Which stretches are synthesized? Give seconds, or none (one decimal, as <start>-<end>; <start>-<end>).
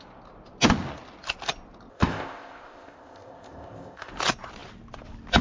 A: 1.9-4.1